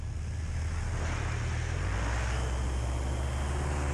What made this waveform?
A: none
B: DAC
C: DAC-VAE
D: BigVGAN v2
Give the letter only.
A